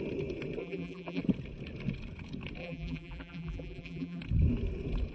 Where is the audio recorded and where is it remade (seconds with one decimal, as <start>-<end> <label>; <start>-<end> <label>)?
0.0-0.6 recorded; 0.6-1.2 remade; 1.2-2.6 recorded; 2.6-4.2 remade; 4.2-5.1 recorded